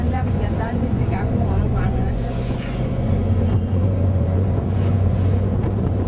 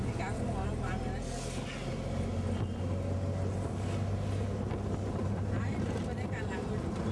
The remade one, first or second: first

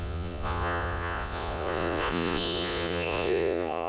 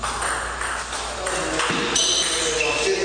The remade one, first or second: first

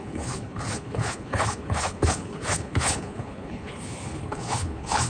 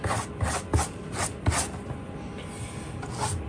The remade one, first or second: first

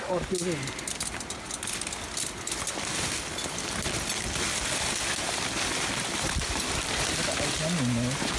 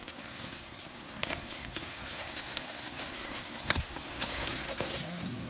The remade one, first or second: second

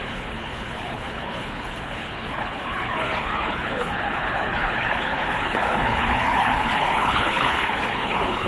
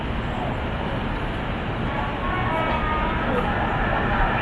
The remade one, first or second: first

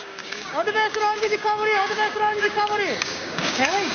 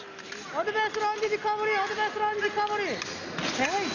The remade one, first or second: first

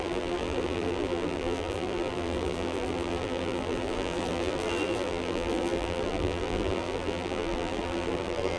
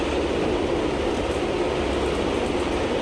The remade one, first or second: first